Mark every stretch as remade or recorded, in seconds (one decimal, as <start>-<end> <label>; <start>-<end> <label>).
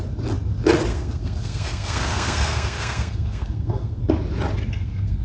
0.0-0.9 recorded; 0.9-4.0 remade; 4.0-4.7 recorded; 4.7-5.2 remade